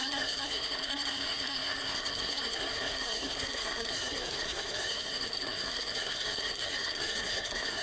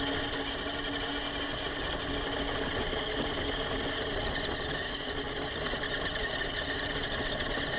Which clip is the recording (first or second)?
second